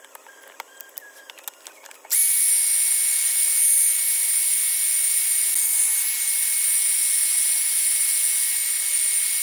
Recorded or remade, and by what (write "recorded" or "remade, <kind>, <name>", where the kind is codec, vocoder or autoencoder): recorded